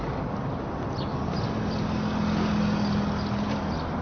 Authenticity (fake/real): real